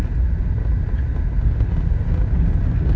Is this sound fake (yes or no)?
no